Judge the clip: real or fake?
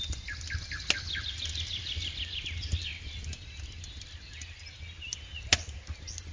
real